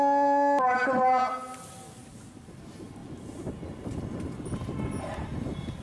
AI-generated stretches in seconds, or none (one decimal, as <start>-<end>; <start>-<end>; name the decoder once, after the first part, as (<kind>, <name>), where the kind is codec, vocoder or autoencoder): none